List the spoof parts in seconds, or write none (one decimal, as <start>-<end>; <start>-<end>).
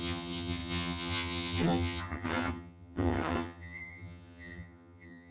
0.0-5.3